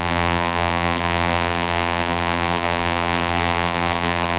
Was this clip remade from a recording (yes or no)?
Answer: yes